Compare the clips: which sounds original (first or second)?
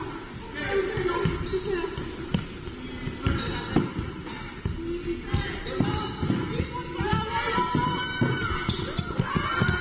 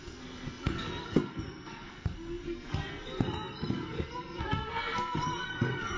first